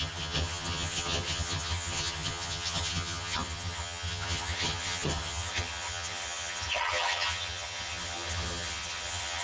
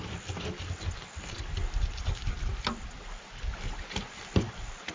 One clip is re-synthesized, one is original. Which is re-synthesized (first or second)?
first